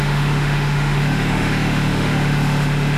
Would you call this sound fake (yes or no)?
yes